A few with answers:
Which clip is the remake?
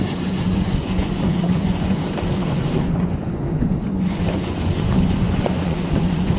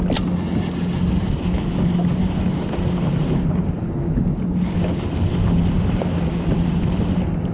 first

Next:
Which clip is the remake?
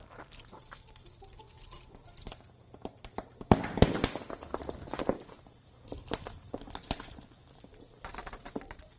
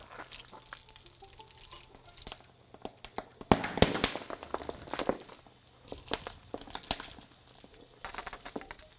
first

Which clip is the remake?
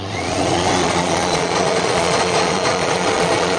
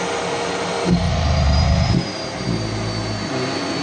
first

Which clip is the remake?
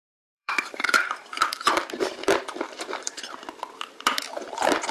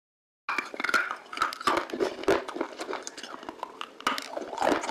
first